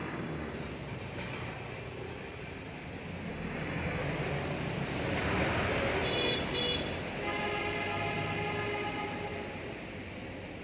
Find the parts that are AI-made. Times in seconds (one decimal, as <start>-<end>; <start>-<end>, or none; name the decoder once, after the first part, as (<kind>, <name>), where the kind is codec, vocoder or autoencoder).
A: 0.0-0.6 (codec, DAC); 3.3-4.0